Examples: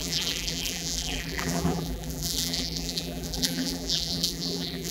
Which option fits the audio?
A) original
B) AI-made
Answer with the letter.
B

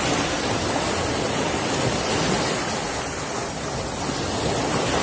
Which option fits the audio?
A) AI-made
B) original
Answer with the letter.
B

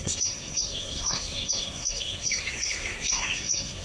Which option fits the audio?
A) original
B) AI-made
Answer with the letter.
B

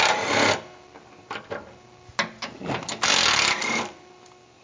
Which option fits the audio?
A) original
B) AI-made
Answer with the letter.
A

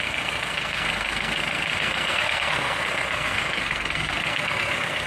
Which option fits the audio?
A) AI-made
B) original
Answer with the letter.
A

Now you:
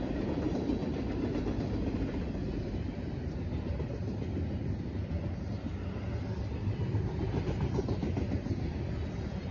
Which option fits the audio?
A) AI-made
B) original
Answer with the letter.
B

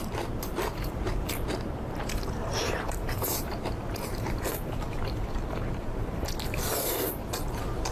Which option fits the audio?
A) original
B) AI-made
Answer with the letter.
B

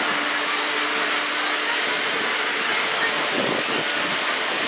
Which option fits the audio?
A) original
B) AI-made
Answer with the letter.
A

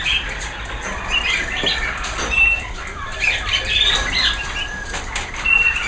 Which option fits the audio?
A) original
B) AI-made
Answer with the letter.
A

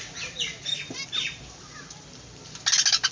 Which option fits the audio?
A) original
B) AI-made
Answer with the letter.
A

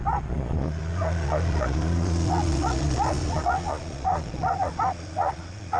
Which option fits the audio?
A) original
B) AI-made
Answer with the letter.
B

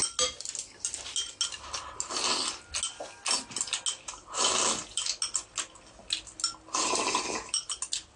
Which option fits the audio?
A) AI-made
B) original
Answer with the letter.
B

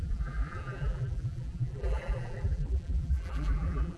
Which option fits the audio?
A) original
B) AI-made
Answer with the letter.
B